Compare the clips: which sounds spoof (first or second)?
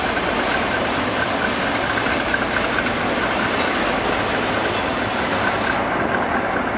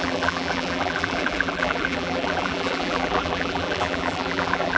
second